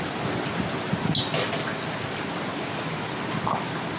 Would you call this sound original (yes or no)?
yes